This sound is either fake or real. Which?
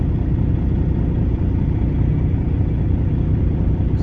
real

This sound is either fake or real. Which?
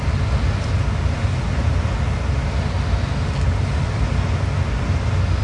real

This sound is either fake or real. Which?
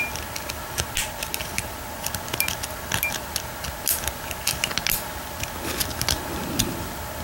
real